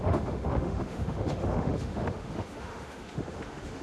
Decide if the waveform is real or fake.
fake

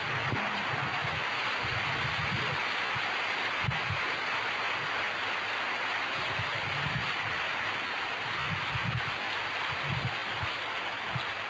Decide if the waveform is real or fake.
real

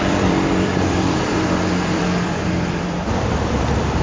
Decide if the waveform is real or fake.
fake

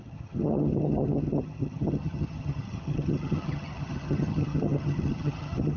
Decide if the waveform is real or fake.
fake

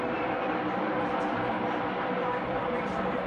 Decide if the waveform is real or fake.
fake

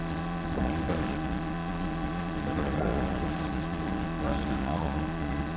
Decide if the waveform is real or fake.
fake